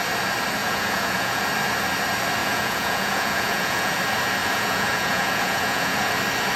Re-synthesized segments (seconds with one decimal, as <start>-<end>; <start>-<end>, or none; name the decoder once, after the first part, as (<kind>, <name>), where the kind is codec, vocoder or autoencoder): 0.6-1.4 (vocoder, Vocos); 2.4-3.9; 4.4-6.1

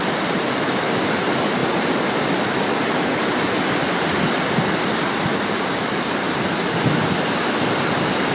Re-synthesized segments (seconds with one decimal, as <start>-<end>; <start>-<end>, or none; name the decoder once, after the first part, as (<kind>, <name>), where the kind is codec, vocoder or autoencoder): 0.0-8.3 (vocoder, BigVGAN v2)

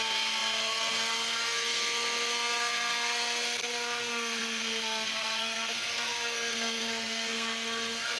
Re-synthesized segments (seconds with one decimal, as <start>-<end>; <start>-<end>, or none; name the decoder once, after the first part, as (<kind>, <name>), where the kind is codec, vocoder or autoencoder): 0.0-8.2 (codec, SNAC)

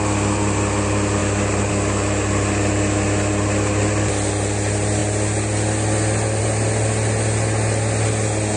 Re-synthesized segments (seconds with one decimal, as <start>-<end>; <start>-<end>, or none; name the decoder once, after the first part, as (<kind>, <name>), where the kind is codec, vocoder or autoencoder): none

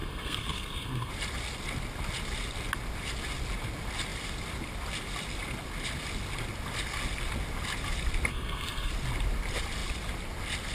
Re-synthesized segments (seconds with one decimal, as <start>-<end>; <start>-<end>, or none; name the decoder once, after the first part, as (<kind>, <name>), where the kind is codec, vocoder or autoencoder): 0.0-1.1 (codec, SNAC); 8.3-8.9

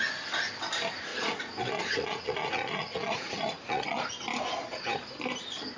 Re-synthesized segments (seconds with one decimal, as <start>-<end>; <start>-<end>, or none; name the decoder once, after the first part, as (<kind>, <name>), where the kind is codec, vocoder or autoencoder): 1.1-4.1 (vocoder, Vocos)